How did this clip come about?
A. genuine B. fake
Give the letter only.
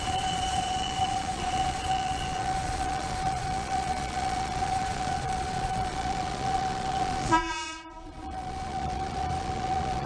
B